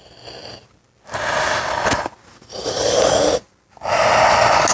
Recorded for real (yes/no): yes